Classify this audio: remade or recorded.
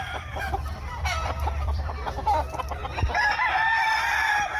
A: remade